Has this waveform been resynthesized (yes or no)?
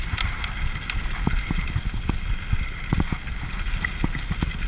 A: no